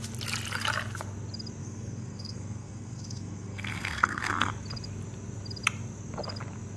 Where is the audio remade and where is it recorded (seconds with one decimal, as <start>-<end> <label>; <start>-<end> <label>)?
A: 0.0-1.6 recorded; 1.6-4.5 remade; 4.5-6.8 recorded